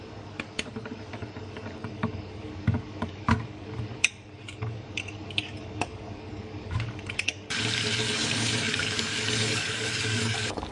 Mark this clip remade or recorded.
remade